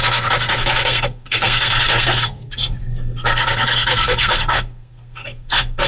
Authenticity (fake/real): fake